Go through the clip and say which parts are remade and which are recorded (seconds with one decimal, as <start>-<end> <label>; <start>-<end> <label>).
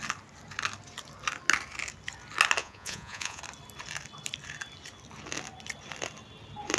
0.0-2.6 recorded; 2.6-3.4 remade; 3.4-6.8 recorded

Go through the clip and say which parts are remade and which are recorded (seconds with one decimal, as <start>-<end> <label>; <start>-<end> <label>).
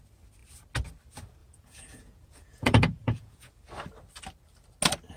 0.0-1.4 recorded; 1.4-3.5 remade; 3.5-5.2 recorded